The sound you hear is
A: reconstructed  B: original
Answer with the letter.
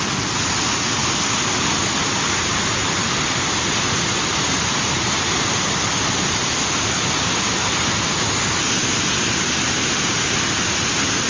B